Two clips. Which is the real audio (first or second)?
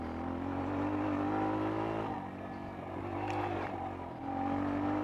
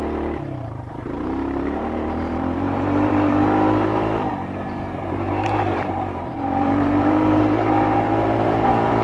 first